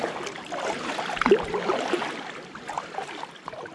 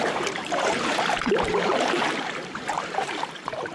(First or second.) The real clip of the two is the first